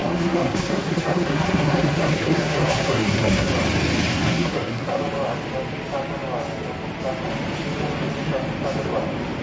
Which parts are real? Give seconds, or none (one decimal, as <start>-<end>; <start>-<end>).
3.5-4.1; 5.0-9.4